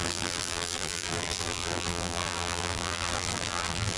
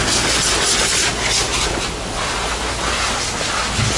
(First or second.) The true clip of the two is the second